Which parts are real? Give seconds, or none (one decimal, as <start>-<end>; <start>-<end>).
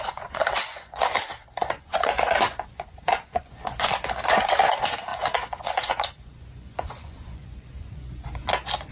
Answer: 1.1-1.6